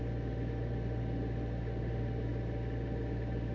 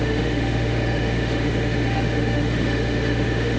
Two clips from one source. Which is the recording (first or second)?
first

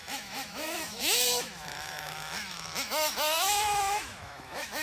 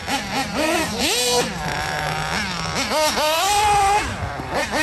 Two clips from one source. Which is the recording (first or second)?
second